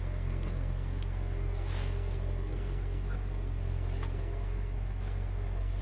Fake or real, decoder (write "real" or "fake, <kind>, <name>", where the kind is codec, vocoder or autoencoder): fake, codec, SNAC